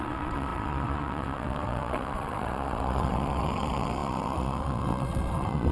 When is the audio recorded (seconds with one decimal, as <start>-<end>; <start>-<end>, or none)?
none